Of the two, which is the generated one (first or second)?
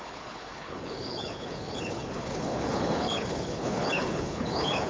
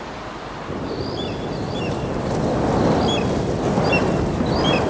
first